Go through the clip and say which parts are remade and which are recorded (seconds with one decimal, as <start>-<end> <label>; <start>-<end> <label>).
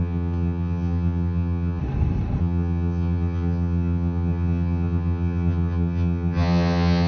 0.0-1.8 remade; 1.8-2.4 recorded; 2.4-7.1 remade